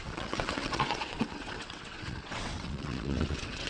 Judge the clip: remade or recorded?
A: remade